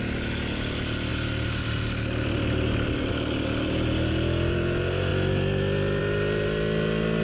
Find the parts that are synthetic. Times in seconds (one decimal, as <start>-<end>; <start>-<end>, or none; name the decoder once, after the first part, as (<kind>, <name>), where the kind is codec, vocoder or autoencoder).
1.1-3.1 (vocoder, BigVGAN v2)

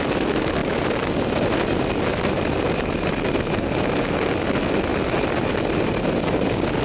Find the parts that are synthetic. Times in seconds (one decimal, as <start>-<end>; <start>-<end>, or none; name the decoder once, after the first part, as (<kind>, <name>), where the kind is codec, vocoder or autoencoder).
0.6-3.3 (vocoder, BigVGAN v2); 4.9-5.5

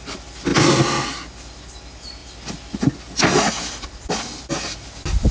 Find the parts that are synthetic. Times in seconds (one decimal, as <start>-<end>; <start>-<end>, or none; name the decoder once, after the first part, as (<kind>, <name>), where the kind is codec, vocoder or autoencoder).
2.2-2.8 (vocoder, BigVGAN v2)

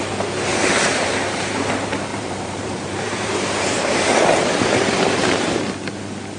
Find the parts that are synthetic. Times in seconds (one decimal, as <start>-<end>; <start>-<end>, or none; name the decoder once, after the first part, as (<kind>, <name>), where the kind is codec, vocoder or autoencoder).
0.5-1.1 (vocoder, BigVGAN v2); 2.1-5.6

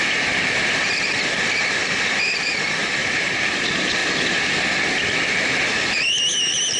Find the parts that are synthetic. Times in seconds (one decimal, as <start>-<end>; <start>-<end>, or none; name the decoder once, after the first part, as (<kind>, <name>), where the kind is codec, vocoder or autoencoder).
3.0-3.5 (vocoder, BigVGAN v2)

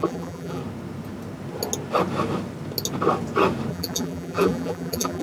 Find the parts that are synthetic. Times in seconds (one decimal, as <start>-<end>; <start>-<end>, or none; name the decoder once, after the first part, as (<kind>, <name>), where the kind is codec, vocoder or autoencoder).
0.0-0.6 (vocoder, BigVGAN v2); 3.7-5.2

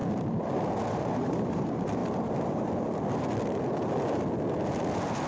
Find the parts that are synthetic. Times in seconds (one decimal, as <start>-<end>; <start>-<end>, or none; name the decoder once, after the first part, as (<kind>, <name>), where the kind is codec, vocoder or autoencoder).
0.9-2.0 (vocoder, BigVGAN v2)

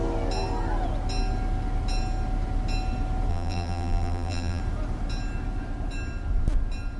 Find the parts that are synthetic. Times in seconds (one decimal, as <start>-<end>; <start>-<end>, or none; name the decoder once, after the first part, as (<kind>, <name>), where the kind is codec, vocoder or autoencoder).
3.3-4.6 (vocoder, BigVGAN v2)